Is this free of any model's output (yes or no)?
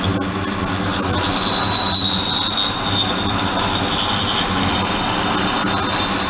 yes